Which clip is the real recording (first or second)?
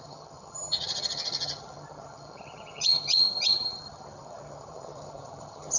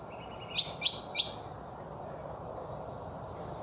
second